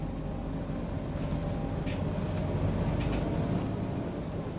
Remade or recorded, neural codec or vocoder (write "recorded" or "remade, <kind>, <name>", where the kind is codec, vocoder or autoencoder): recorded